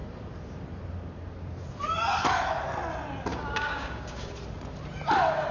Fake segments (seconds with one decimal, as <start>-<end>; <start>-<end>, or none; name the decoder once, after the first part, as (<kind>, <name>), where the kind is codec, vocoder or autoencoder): 3.3-4.3 (codec, DAC)